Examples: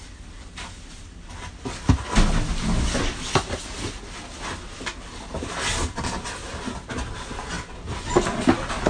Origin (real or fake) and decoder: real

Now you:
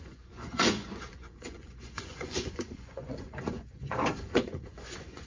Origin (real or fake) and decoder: fake, vocoder, Vocos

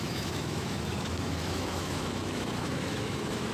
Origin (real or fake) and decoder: fake, autoencoder, DAC-VAE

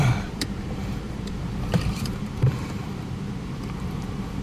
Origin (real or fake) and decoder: fake, vocoder, BigVGAN v2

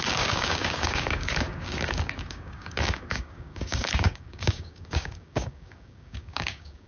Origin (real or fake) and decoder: fake, codec, DAC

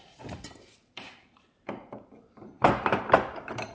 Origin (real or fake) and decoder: fake, vocoder, BigVGAN v2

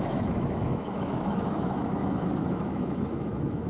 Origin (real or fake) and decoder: fake, autoencoder, DAC-VAE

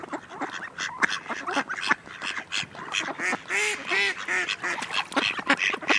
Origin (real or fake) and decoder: real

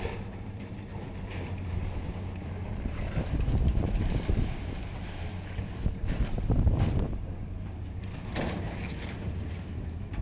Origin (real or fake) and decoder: fake, vocoder, BigVGAN v2